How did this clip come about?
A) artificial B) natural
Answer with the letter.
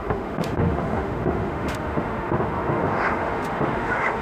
A